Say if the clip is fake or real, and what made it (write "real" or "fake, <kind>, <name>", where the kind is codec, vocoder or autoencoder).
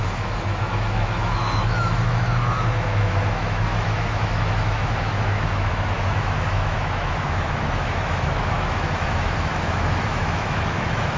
fake, autoencoder, DAC-VAE